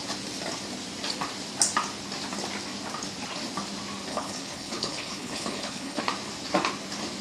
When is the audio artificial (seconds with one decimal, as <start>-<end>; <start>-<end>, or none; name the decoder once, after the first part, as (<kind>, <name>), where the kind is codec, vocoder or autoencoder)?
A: 4.1-6.0 (codec, HILCodec)